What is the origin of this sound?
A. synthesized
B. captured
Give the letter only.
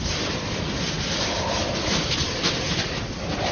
B